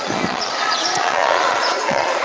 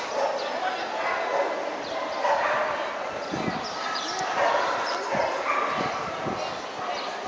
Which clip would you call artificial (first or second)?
first